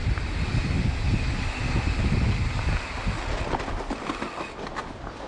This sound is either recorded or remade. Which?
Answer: recorded